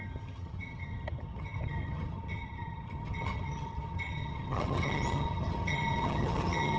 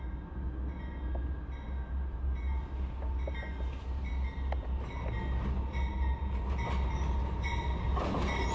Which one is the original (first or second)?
second